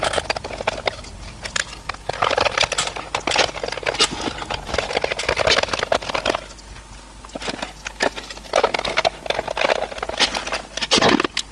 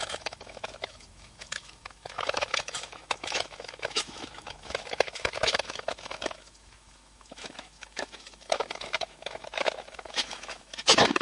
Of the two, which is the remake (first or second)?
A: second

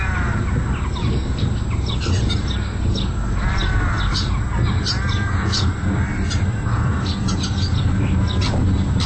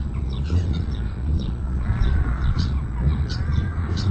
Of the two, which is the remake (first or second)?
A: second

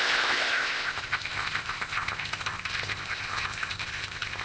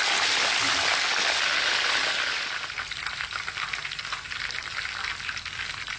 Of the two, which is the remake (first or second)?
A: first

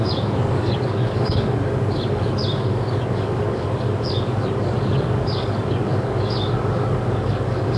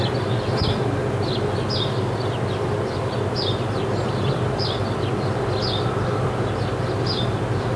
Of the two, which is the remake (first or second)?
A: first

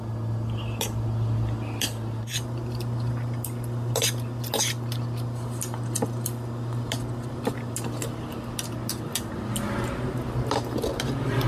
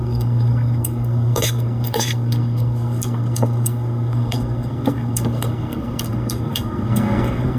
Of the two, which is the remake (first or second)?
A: second